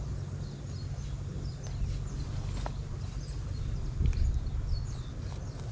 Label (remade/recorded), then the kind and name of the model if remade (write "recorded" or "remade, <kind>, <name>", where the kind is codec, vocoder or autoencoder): recorded